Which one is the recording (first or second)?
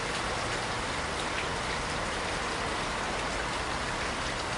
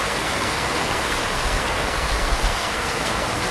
first